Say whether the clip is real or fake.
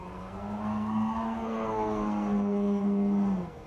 fake